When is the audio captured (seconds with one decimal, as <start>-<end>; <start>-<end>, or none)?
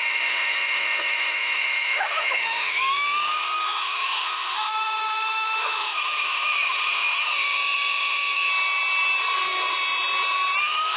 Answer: 8.5-10.6